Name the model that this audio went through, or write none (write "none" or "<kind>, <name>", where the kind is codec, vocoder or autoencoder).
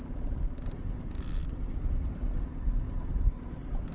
none